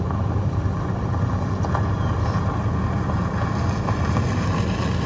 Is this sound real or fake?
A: real